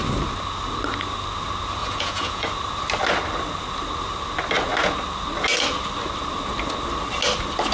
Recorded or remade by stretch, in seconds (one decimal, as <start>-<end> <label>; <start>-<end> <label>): 0.0-1.8 recorded; 1.8-2.5 remade; 2.5-7.7 recorded